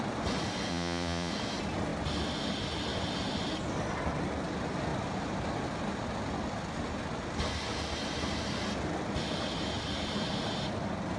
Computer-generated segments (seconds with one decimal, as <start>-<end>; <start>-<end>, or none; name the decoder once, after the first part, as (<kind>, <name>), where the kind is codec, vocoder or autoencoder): 0.7-1.3 (vocoder, Vocos)